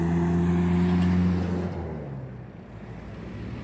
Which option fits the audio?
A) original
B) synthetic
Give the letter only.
A